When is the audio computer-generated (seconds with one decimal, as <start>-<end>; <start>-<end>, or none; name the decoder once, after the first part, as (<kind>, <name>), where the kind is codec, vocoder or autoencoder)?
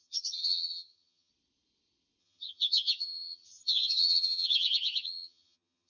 0.0-1.3 (vocoder, HiFi-GAN); 2.2-5.9